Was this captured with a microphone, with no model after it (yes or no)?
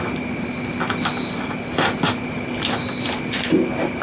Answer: yes